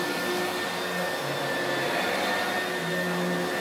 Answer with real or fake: real